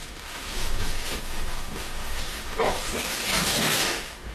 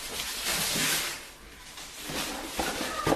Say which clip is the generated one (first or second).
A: first